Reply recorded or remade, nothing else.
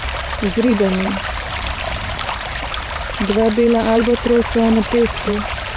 remade